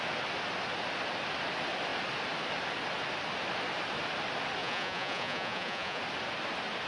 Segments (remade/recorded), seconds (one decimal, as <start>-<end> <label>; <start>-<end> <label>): 0.0-4.6 recorded; 4.6-6.0 remade; 6.0-6.9 recorded